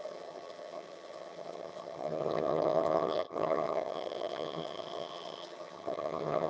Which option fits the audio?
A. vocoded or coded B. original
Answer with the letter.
A